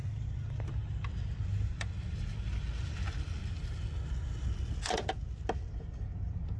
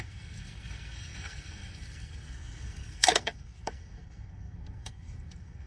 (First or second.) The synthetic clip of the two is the second